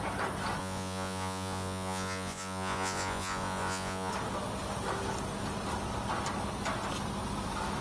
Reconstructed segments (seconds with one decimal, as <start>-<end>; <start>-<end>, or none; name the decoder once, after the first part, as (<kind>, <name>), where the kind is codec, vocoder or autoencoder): 0.6-4.1 (vocoder, Vocos)